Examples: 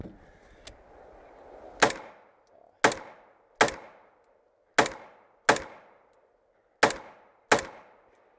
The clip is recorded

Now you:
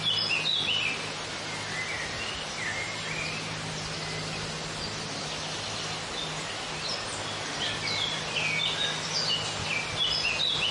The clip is recorded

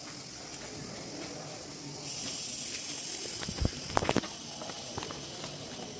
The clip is recorded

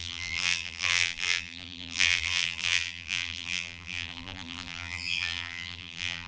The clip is remade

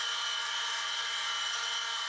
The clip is recorded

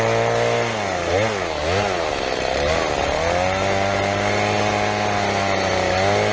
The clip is recorded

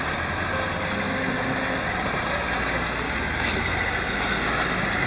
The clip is recorded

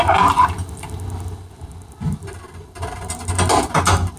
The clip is recorded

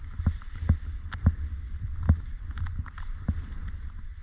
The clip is remade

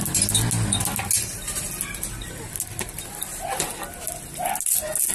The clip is recorded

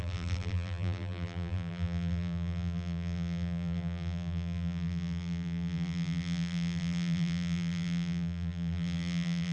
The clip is remade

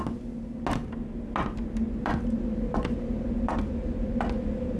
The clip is recorded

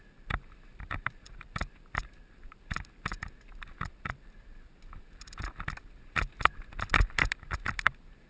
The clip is remade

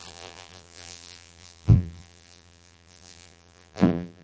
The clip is remade